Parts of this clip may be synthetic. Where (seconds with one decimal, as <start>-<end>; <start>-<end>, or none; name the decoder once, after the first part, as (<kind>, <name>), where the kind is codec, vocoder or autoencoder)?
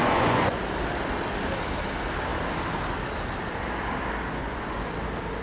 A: 0.0-0.6 (vocoder, Vocos); 4.4-4.9